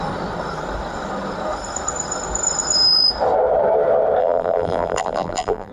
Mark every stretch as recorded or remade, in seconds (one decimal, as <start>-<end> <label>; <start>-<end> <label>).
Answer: 0.0-4.2 recorded; 4.2-5.7 remade